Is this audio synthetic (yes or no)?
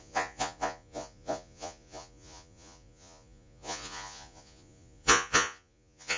yes